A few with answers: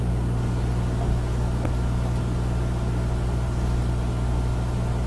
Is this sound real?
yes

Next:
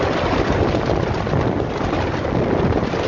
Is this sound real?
yes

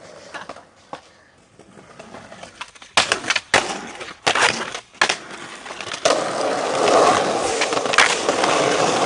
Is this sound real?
yes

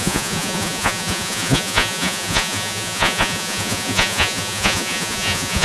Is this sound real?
no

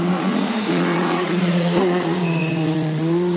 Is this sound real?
no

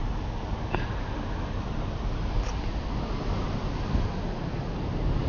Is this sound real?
yes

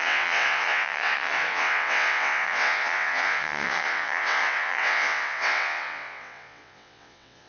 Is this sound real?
no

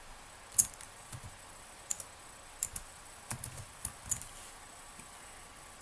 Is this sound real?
yes